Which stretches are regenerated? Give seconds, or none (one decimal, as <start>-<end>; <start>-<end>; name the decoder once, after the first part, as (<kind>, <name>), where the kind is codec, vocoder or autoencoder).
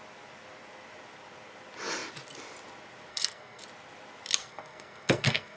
3.1-3.6 (codec, SNAC); 4.4-5.6